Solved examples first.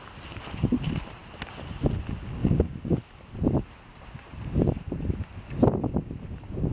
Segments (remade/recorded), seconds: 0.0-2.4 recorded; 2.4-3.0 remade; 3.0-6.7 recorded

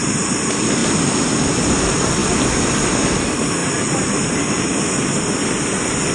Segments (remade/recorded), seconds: 0.0-6.1 recorded

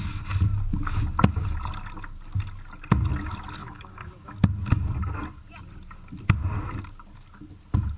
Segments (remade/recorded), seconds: 0.0-3.6 recorded; 3.6-4.3 remade; 4.3-8.0 recorded

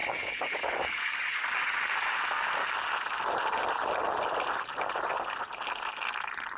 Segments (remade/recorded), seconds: 0.0-1.6 remade; 1.6-6.6 recorded

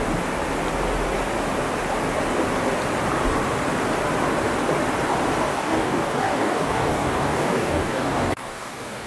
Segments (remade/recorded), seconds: 0.0-5.5 recorded; 5.5-9.1 remade

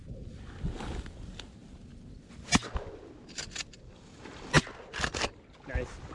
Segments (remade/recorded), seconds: 0.0-6.1 recorded

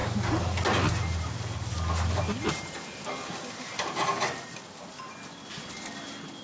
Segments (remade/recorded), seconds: 0.0-6.4 recorded

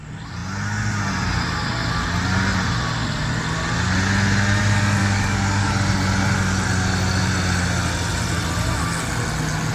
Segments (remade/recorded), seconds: 0.0-5.0 recorded; 5.0-5.7 remade; 5.7-9.7 recorded